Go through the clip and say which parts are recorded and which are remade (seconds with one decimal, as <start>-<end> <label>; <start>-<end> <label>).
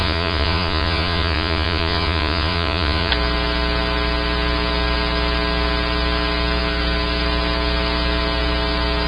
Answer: 0.0-3.1 remade; 3.1-9.1 recorded